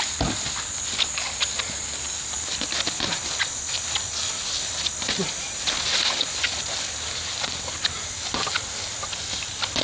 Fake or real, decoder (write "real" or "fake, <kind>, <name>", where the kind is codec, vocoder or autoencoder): real